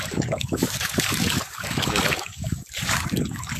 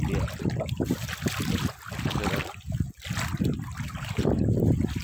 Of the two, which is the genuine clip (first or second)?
second